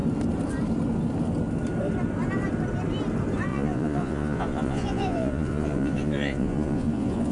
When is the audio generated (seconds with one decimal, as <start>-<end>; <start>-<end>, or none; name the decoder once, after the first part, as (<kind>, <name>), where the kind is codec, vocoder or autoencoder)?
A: 3.5-7.3 (vocoder, Vocos)